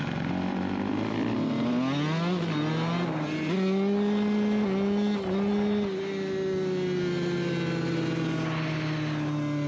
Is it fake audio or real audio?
real